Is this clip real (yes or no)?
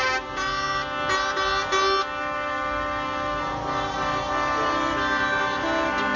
yes